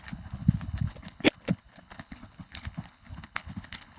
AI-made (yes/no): yes